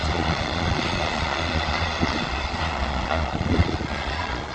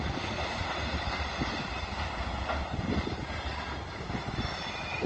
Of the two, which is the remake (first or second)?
first